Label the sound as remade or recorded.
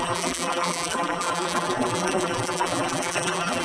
remade